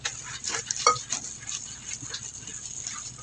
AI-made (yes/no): no